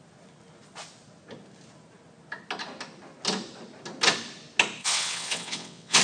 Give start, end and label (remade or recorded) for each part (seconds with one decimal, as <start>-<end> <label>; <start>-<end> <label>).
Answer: 0.0-4.8 recorded; 4.8-6.0 remade